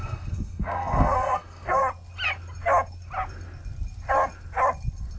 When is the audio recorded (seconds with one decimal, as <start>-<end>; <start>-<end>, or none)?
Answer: 1.8-5.2